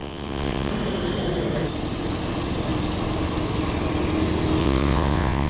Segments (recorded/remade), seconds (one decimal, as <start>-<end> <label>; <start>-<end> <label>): 0.0-0.7 remade; 0.7-4.6 recorded; 4.6-5.5 remade